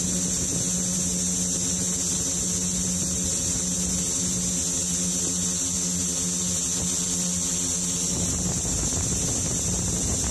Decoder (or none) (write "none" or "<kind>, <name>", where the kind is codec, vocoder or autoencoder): none